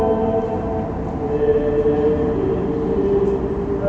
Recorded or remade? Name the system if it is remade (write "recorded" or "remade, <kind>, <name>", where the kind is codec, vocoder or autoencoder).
recorded